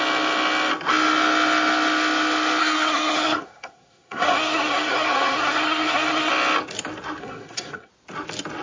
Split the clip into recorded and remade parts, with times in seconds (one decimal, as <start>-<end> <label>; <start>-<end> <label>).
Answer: 0.0-2.6 recorded; 2.6-6.3 remade; 6.3-7.2 recorded; 7.2-7.9 remade; 7.9-8.6 recorded